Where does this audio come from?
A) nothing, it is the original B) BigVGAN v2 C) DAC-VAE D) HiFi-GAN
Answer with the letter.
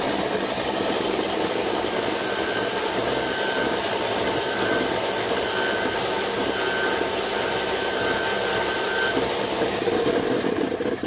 A